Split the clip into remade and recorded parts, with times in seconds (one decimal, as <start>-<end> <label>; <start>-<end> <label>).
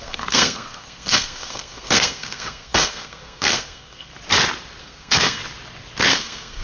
0.0-4.1 remade; 4.1-4.8 recorded; 4.8-5.4 remade; 5.4-6.1 recorded; 6.1-6.6 remade